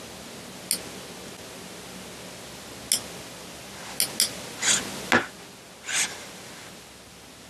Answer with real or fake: real